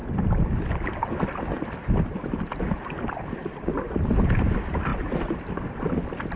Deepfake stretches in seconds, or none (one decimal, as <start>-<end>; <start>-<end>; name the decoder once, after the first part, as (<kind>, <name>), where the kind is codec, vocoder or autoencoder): none